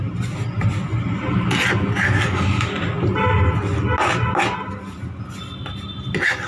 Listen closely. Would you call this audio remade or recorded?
recorded